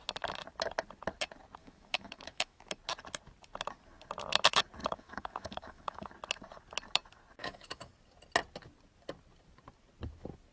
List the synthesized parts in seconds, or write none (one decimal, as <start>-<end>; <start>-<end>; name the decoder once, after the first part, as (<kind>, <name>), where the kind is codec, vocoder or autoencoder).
1.6-2.6 (autoencoder, DAC-VAE); 4.8-6.1; 7.4-7.9